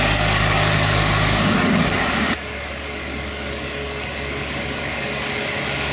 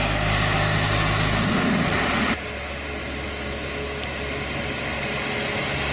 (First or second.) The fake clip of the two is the first